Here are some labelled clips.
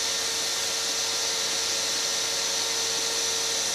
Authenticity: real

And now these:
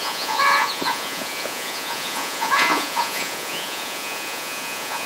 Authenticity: fake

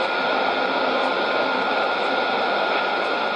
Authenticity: real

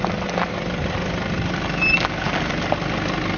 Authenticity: real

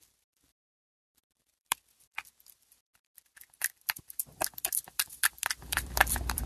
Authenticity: fake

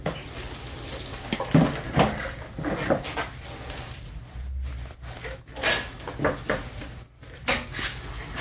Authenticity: real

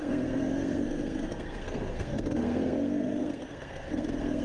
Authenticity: fake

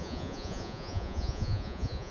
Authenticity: fake